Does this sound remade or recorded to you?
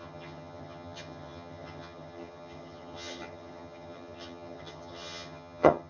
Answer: remade